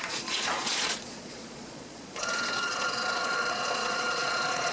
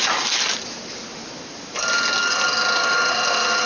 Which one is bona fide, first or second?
second